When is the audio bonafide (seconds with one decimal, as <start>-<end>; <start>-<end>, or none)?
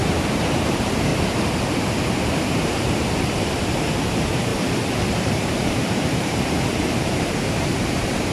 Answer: 1.1-2.5; 4.5-5.2